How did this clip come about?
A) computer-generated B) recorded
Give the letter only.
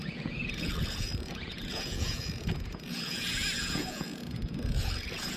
A